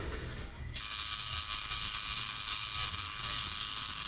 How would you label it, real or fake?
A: fake